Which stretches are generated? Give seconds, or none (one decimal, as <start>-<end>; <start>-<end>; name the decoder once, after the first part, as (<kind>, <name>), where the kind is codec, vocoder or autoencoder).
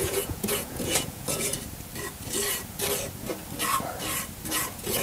0.0-1.5 (vocoder, Vocos); 4.5-5.0